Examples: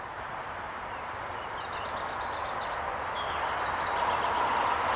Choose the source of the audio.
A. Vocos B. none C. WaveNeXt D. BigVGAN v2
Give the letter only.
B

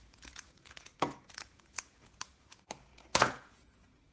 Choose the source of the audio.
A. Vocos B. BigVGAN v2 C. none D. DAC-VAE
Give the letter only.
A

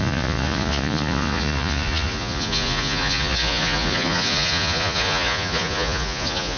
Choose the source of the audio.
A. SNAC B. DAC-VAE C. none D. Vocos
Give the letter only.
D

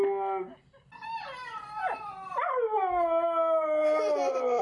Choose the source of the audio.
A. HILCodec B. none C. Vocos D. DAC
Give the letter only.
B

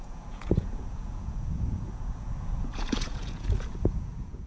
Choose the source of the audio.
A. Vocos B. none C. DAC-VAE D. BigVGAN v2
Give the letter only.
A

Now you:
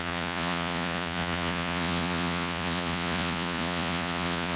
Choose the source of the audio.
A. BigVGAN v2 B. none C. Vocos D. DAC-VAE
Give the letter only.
C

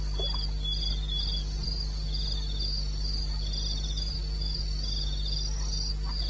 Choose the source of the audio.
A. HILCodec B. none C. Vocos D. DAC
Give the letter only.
B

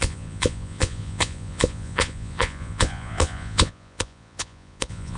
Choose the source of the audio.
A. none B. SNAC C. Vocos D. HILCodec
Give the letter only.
C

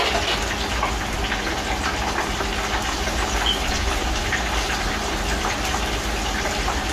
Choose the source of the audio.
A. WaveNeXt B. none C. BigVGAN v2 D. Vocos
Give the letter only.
B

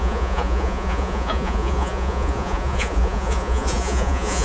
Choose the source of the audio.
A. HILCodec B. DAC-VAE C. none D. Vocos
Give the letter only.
D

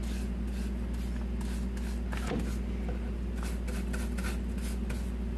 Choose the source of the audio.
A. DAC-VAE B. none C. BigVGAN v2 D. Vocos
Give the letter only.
B